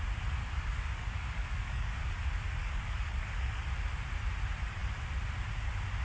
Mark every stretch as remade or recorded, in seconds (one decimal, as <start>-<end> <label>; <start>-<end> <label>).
0.0-0.4 recorded; 0.4-2.1 remade; 2.1-2.6 recorded; 2.6-3.6 remade; 3.6-6.0 recorded